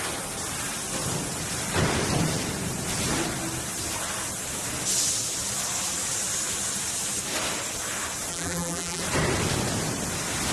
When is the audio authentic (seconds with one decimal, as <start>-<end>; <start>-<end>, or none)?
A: 0.0-8.3; 9.0-10.5